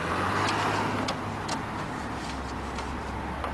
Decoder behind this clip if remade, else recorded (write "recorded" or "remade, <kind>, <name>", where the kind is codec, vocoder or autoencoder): recorded